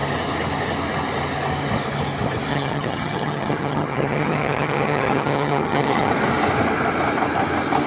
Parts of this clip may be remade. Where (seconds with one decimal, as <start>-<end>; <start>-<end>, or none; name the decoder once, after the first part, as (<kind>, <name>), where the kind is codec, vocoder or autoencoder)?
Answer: 2.5-6.1 (vocoder, HiFi-GAN)